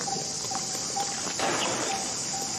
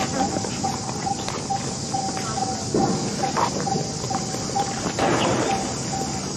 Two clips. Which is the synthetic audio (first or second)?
first